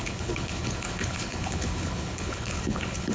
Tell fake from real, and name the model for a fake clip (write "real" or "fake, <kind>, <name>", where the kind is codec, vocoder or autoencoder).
fake, codec, HILCodec